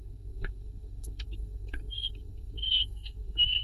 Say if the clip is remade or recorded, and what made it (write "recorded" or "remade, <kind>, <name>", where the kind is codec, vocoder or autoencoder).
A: remade, codec, SNAC